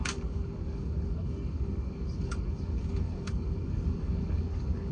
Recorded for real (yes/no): no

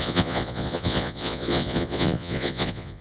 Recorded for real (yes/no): no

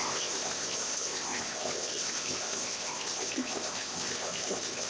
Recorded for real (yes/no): no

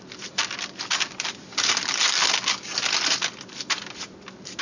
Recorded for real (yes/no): yes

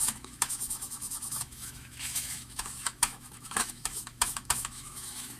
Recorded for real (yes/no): no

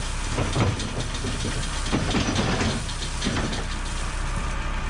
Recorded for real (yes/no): no